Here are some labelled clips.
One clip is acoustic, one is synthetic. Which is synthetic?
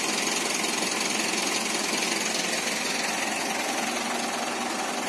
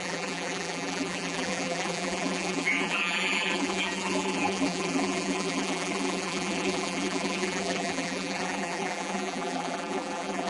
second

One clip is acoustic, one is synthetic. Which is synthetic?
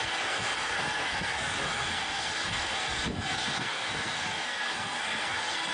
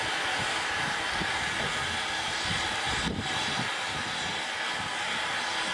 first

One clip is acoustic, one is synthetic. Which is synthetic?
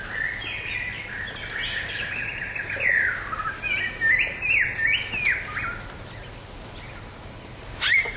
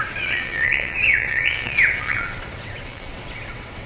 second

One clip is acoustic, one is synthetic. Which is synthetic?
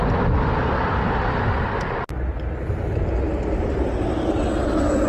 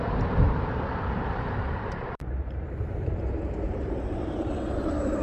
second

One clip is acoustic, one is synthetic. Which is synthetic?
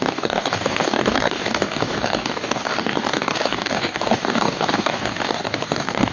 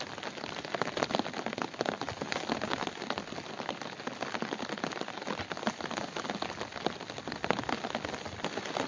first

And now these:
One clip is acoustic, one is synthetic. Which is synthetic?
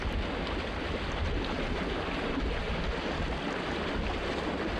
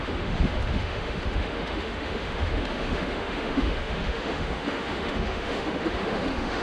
second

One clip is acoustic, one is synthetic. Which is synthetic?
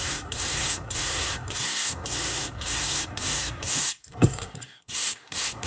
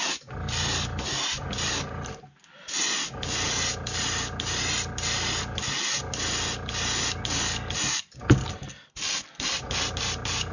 first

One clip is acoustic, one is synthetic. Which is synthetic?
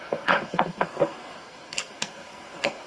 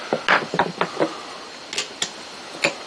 first